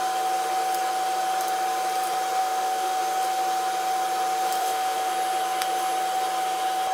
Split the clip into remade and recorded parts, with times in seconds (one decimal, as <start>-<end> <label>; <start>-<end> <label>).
0.0-2.4 recorded; 2.4-3.0 remade; 3.0-4.6 recorded; 4.6-5.1 remade; 5.1-6.9 recorded

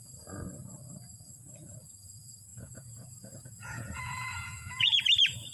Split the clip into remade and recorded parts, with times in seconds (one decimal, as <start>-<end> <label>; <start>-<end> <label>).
0.0-2.5 recorded; 2.5-5.0 remade; 5.0-5.5 recorded

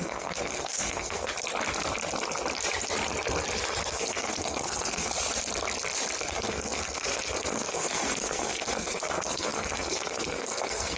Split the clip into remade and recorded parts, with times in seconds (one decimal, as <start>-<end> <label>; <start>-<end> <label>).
0.0-1.3 remade; 1.3-3.9 recorded; 3.9-5.1 remade; 5.1-6.2 recorded; 6.2-11.0 remade

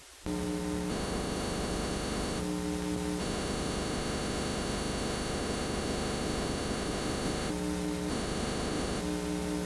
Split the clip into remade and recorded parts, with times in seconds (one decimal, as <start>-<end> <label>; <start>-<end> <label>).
0.0-0.9 recorded; 0.9-2.4 remade; 2.4-3.2 recorded; 3.2-7.5 remade; 7.5-8.1 recorded; 8.1-9.0 remade; 9.0-9.7 recorded

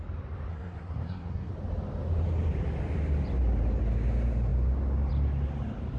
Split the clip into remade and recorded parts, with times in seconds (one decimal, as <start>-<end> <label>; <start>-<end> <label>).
0.0-0.5 recorded; 0.5-1.5 remade; 1.5-6.0 recorded